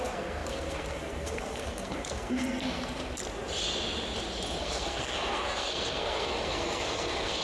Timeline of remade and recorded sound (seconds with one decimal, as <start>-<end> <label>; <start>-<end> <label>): 0.0-3.2 remade; 3.2-4.6 recorded; 4.6-7.4 remade